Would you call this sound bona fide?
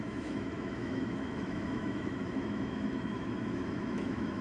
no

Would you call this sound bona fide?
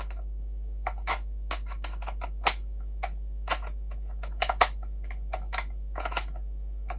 no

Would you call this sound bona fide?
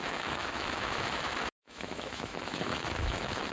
no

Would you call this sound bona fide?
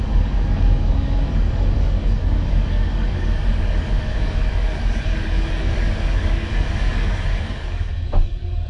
no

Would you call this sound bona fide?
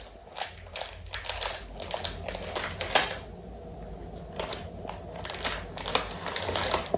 yes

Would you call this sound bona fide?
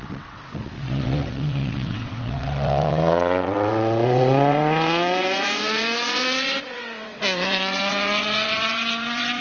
no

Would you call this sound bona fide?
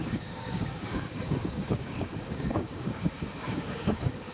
no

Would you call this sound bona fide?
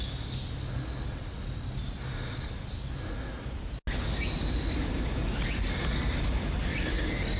yes